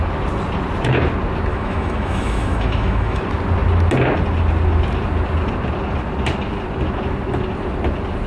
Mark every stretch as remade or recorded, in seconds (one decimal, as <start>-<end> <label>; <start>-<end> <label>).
0.0-1.5 recorded; 1.5-3.2 remade; 3.2-8.3 recorded